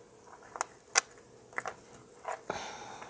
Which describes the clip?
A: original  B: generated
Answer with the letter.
A